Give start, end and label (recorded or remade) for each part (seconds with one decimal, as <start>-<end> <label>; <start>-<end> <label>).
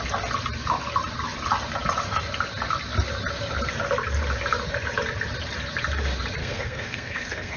0.0-6.4 recorded; 6.4-7.6 remade